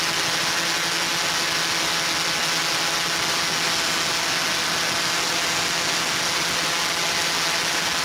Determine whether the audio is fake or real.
real